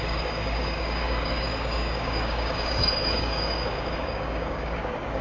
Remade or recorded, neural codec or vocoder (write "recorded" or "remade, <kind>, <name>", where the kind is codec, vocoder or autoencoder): remade, codec, DAC